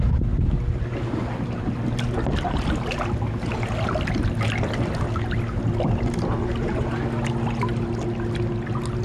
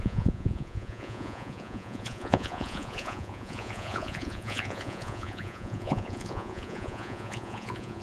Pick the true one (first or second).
first